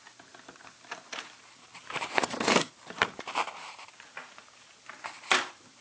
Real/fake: fake